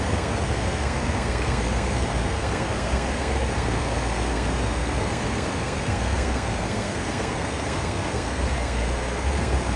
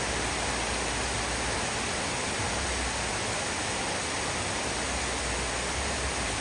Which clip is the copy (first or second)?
first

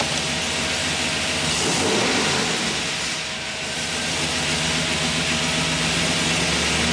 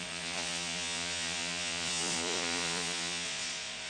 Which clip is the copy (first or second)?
second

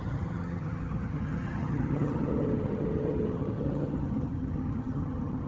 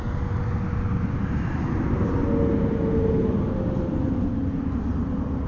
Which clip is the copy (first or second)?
first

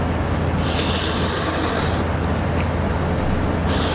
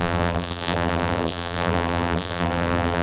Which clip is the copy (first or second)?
second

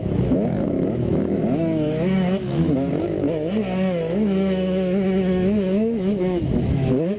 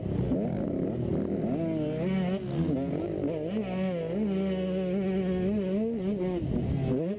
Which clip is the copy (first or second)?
first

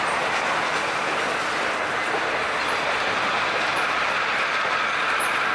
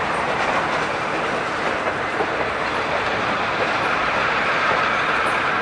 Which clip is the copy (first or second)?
second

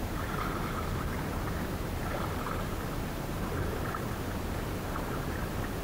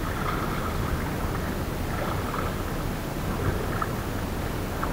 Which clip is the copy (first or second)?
first